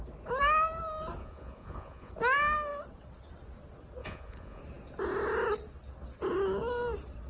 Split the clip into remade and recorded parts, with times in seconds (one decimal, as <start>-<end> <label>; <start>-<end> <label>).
0.0-1.2 recorded; 1.2-2.1 remade; 2.1-4.0 recorded; 4.0-4.6 remade; 4.6-7.3 recorded